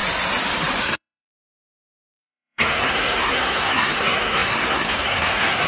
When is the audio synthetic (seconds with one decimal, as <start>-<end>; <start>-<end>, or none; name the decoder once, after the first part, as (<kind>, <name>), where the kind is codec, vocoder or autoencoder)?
0.8-5.7 (codec, SNAC)